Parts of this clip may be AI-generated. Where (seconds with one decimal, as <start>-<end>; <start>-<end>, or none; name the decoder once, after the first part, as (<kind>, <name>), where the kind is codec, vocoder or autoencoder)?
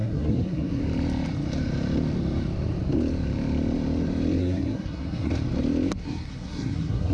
0.0-0.8 (codec, SNAC); 4.4-5.3; 6.0-7.1